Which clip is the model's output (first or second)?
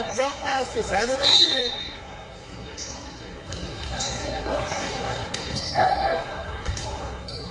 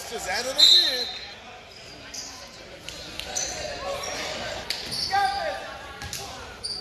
first